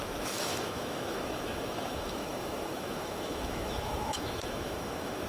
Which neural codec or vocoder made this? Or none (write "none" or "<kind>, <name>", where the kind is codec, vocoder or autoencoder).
autoencoder, DAC-VAE